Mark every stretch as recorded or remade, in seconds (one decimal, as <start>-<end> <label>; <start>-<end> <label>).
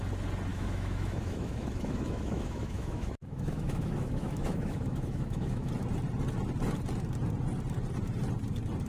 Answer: 0.0-0.5 recorded; 0.5-5.7 remade; 5.7-8.9 recorded